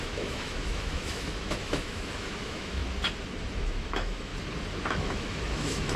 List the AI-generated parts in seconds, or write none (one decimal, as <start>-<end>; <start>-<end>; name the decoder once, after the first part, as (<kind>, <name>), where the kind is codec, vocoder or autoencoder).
0.0-2.8 (autoencoder, DAC-VAE); 3.6-4.3; 4.9-6.0